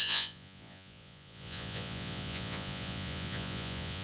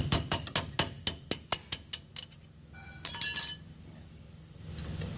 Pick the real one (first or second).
second